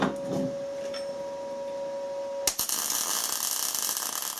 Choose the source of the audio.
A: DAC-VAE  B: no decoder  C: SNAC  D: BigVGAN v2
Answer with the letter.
B